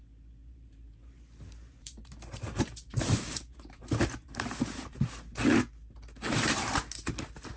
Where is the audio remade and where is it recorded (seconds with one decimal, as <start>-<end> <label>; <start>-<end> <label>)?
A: 0.0-0.4 recorded; 0.4-5.0 remade; 5.0-7.6 recorded